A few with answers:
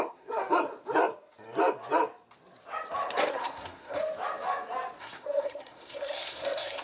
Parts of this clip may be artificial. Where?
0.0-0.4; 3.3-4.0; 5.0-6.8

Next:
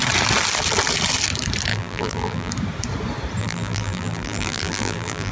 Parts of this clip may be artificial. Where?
1.7-2.5; 3.4-5.3